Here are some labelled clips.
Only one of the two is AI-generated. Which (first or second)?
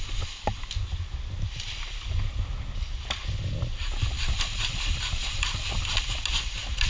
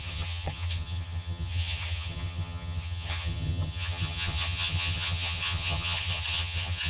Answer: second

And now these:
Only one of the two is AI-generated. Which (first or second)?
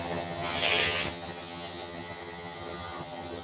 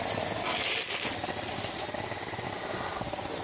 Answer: first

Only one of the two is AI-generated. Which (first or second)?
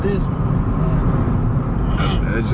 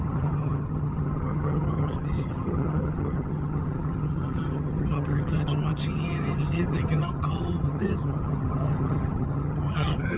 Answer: second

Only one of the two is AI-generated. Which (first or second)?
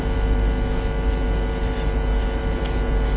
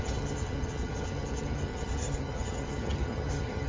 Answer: second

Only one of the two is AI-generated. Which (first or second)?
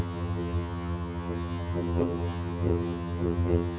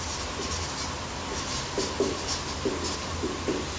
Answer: first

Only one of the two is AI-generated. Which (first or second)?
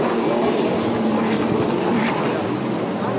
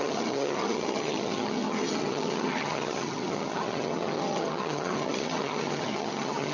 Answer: second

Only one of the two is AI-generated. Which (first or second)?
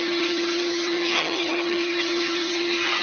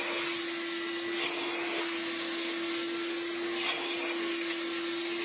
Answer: first